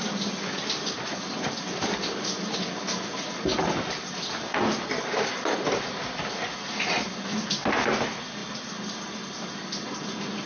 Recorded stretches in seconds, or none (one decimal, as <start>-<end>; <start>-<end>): 0.0-10.5